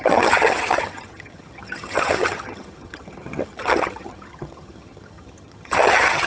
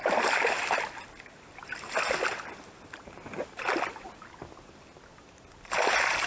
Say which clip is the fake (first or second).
first